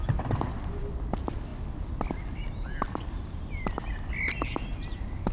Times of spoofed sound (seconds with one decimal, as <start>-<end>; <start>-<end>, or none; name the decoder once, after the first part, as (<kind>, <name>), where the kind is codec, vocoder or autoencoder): none